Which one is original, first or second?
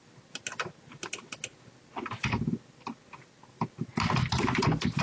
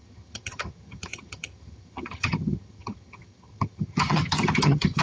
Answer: first